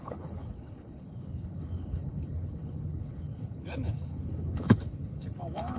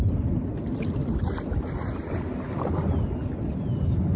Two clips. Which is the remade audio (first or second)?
first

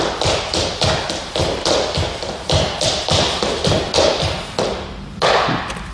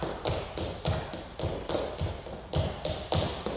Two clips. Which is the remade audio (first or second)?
first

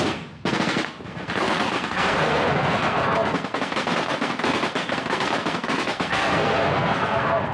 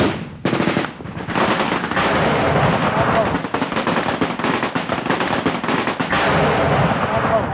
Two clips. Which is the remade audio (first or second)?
first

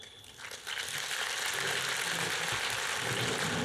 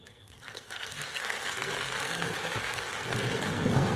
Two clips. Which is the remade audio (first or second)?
second